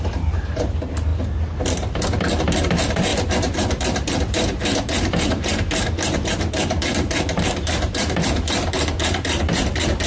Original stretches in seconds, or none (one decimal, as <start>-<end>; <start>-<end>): 1.1-2.6